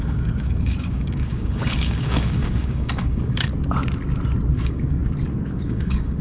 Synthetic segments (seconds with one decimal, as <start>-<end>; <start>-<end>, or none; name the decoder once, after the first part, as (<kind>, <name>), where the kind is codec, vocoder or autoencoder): 0.0-3.5 (codec, DAC); 4.5-5.0; 5.5-6.2

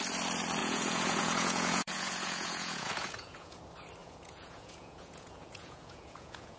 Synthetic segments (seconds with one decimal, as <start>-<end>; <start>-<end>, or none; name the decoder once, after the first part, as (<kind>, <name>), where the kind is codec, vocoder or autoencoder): 0.6-3.6 (vocoder, Vocos); 4.0-6.6